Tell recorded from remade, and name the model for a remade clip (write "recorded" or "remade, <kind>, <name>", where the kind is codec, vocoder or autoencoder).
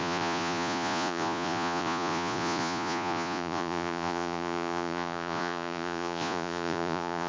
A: remade, vocoder, Vocos